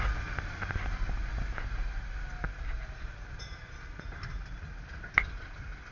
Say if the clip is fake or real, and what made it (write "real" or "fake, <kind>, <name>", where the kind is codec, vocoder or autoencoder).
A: real